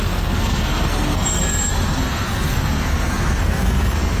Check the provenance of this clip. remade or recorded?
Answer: remade